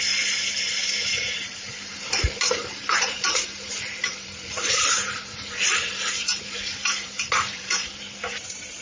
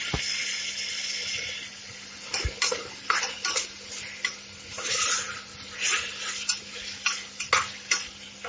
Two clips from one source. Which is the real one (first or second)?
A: second